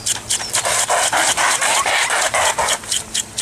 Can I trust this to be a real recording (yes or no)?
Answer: yes